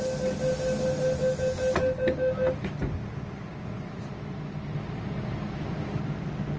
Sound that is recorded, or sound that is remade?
recorded